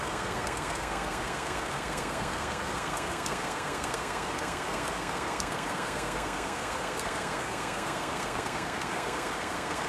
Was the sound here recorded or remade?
remade